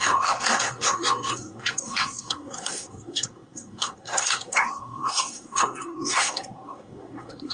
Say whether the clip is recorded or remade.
remade